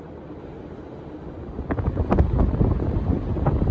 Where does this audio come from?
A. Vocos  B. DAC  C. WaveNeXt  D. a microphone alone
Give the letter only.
D